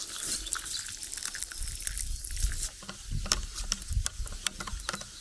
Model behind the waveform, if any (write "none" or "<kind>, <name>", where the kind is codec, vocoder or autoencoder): none